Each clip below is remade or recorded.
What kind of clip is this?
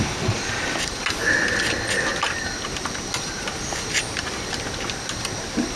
recorded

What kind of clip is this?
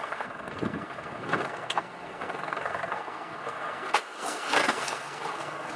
remade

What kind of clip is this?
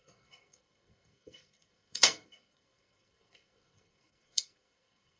remade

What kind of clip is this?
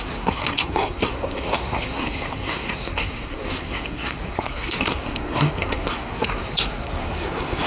remade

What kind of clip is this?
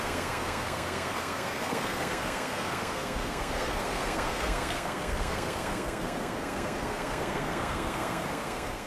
remade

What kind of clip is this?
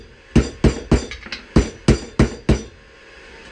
recorded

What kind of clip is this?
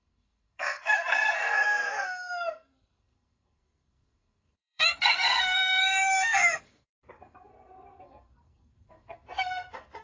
remade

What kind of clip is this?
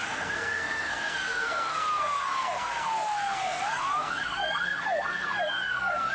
remade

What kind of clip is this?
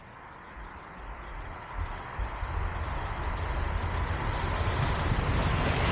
recorded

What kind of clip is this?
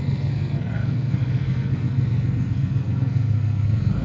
remade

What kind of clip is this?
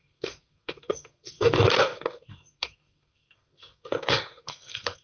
remade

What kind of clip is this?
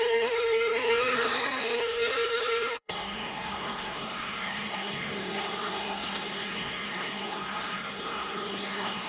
remade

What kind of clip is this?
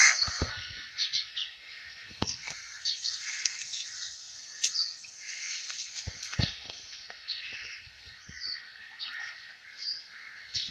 remade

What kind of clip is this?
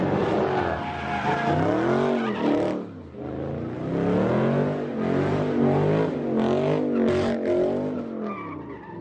recorded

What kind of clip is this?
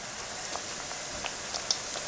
recorded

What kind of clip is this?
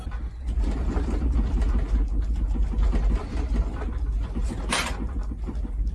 recorded